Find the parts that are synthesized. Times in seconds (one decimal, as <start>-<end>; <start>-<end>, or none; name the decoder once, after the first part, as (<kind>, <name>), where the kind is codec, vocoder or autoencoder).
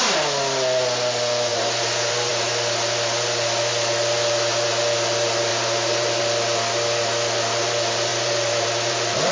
1.5-2.3 (vocoder, BigVGAN v2); 5.5-6.2; 8.1-9.3